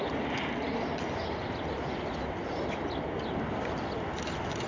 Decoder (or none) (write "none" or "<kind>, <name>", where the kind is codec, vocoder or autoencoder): none